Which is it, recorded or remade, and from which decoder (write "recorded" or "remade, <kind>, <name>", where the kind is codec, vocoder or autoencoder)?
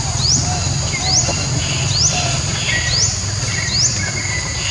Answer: recorded